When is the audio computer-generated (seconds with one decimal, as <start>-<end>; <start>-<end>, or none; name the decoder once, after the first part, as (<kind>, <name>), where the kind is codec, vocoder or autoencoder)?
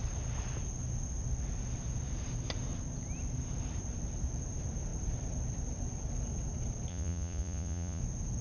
6.9-8.0 (vocoder, Vocos)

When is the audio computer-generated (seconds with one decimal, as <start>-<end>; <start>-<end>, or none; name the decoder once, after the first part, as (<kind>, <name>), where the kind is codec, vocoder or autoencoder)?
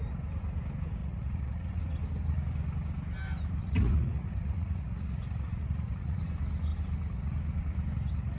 1.0-1.8 (vocoder, Vocos); 3.6-6.2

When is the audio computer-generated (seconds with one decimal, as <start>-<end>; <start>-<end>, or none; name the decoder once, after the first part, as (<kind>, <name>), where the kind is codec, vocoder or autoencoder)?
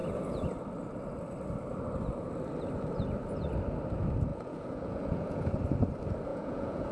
4.3-5.5 (vocoder, Vocos); 6.3-6.9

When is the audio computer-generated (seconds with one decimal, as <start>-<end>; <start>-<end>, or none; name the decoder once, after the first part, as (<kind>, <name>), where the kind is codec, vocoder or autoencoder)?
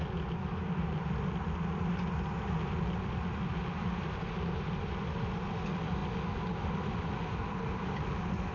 none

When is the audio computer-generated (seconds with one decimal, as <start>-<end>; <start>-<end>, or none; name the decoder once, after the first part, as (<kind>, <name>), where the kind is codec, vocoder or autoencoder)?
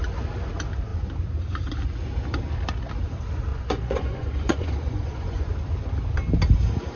3.5-5.5 (vocoder, Vocos)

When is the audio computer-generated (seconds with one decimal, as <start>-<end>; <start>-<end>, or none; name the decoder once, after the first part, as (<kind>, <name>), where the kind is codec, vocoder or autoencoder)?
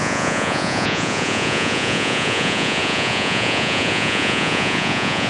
0.0-5.3 (vocoder, Vocos)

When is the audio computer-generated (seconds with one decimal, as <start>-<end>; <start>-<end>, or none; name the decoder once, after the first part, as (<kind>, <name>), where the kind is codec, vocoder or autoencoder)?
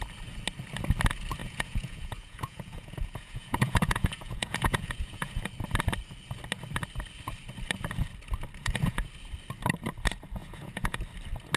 1.4-5.5 (vocoder, Vocos); 8.6-9.1; 10.4-11.0